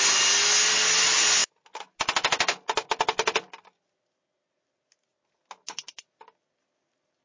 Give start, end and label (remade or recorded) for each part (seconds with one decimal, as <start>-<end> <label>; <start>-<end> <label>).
0.0-7.2 recorded